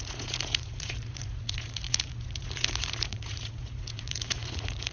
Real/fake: fake